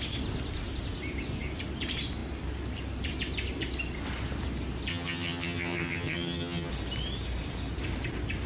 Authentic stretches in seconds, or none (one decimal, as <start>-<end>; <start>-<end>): 0.0-4.9; 6.7-8.5